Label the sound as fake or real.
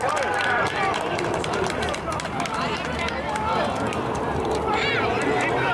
fake